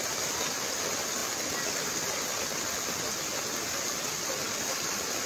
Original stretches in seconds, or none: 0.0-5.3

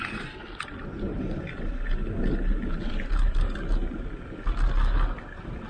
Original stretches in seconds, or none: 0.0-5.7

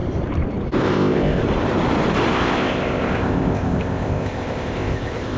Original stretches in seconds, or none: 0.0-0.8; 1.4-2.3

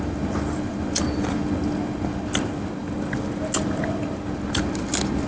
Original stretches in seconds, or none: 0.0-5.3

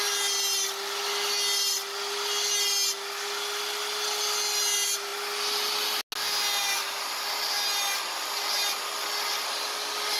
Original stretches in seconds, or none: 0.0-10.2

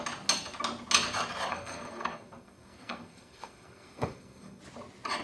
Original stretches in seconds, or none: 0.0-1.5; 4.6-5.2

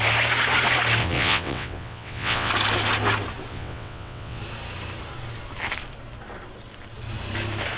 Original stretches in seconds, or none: 0.0-1.0; 2.5-3.5; 4.4-7.8

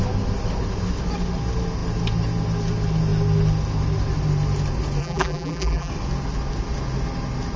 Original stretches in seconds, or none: 0.0-5.0; 5.9-7.6